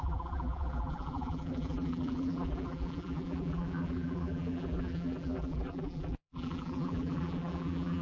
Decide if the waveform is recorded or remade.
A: remade